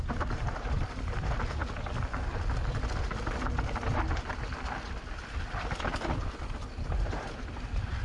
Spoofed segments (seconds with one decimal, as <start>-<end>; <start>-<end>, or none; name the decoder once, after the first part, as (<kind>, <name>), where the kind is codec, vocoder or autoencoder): 0.0-1.6 (vocoder, BigVGAN v2); 6.4-8.0